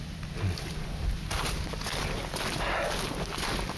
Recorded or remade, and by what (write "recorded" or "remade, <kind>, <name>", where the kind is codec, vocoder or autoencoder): recorded